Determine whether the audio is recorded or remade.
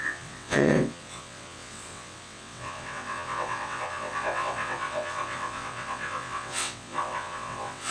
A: remade